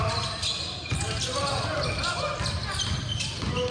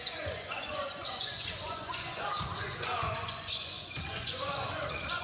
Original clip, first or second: first